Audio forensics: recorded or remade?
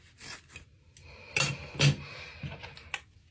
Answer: recorded